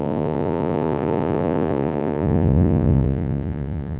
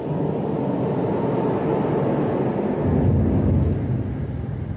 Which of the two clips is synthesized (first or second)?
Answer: first